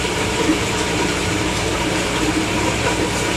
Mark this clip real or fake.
fake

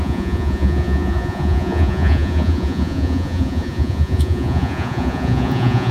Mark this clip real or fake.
fake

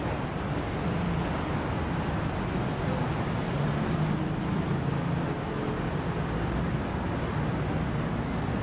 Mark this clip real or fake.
real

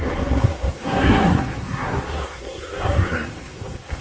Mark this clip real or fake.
fake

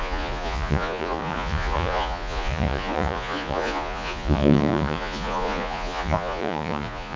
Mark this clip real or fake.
fake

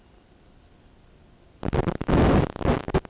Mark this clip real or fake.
real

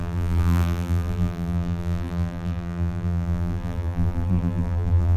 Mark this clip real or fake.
fake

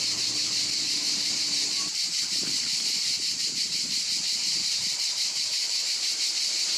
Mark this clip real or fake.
fake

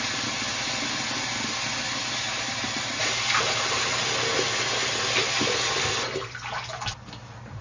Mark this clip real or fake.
real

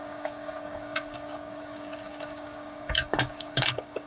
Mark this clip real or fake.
fake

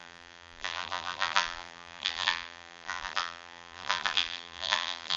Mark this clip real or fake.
fake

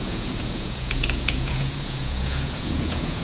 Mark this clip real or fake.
fake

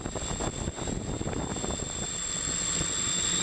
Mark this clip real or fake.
real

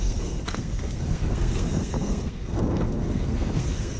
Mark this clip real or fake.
fake